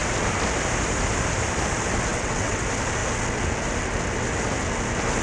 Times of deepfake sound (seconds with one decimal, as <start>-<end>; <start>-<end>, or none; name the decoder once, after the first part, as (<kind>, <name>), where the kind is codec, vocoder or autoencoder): 2.1-2.6 (vocoder, WaveNeXt)

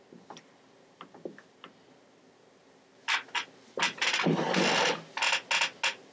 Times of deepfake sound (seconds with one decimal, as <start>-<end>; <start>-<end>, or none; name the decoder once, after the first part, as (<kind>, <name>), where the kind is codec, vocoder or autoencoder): none

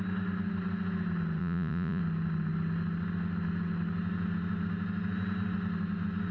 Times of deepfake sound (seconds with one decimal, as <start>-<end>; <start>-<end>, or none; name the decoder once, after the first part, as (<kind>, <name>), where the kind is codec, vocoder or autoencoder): 1.4-2.0 (vocoder, Vocos)

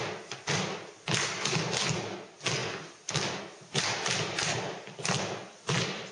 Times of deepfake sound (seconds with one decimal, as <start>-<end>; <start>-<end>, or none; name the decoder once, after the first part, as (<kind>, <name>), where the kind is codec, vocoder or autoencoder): none

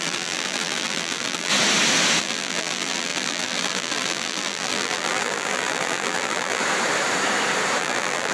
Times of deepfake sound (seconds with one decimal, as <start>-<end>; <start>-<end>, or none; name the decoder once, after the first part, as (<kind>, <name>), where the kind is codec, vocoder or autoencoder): 0.0-1.5 (vocoder, BigVGAN v2); 2.2-6.6; 7.8-8.3

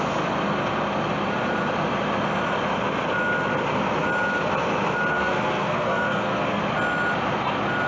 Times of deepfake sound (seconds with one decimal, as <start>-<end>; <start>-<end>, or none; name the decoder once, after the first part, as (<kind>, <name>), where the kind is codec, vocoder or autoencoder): 5.1-6.6 (codec, SNAC)

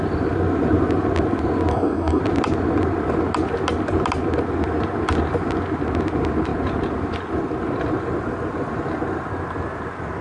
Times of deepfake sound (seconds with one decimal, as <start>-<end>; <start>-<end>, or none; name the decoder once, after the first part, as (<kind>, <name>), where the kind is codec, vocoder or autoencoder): 1.7-2.2 (codec, DAC)

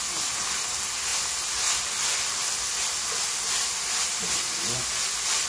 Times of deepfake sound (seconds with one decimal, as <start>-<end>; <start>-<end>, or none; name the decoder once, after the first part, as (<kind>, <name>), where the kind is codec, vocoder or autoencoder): none